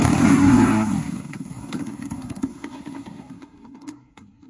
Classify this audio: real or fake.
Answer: fake